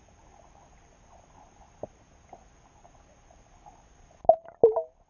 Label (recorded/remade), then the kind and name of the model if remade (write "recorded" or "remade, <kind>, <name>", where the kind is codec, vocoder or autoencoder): recorded